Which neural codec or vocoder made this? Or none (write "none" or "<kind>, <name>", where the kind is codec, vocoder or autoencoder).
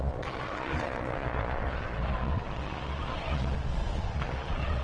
vocoder, Vocos